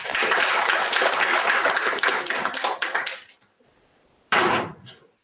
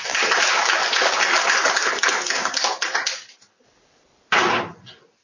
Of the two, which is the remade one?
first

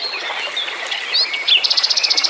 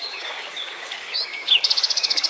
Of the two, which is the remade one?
second